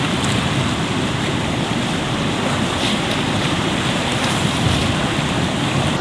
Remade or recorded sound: remade